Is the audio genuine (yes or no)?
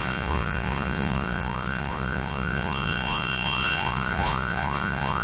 no